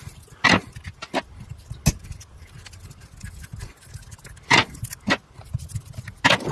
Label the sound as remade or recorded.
recorded